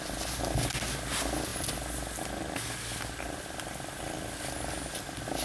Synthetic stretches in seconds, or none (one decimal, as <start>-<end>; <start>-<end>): none